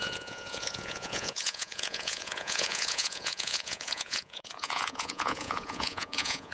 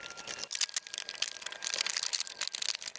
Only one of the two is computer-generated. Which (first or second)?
first